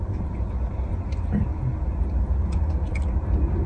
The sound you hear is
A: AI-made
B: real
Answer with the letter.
B